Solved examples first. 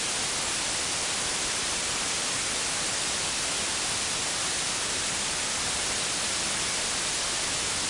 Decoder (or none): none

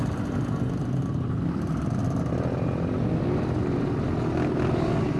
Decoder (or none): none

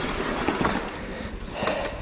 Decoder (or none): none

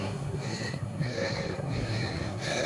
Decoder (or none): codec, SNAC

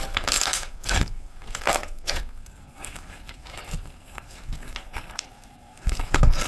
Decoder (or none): codec, SNAC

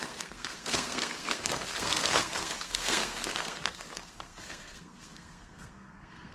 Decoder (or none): codec, SNAC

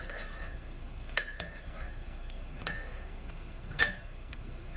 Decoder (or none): codec, SNAC